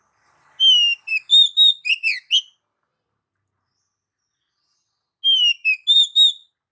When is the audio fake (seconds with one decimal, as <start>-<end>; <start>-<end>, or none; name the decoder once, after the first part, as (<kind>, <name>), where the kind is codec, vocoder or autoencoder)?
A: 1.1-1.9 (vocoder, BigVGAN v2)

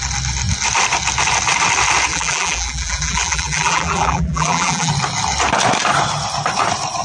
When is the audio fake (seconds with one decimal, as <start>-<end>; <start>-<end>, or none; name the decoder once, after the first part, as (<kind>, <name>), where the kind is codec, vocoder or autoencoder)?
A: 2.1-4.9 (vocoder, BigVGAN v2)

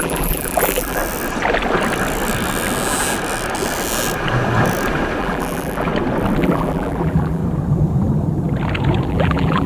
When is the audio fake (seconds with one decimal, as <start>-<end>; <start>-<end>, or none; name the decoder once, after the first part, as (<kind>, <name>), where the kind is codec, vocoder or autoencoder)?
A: 0.0-1.0 (vocoder, BigVGAN v2); 5.2-5.9; 6.4-7.4; 9.1-9.7